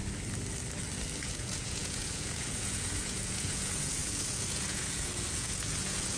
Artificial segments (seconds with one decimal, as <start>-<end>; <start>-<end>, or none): 1.2-6.2